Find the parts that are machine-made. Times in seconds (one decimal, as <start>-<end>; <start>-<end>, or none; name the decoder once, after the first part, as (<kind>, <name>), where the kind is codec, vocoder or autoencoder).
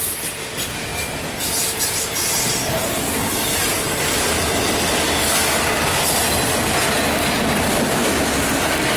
none